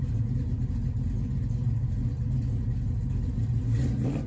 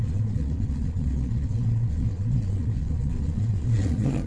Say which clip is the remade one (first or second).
second